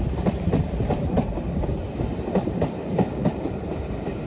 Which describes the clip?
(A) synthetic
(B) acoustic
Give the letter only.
A